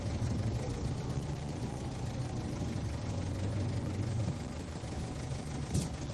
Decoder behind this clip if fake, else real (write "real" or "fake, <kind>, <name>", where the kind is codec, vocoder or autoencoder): fake, vocoder, Vocos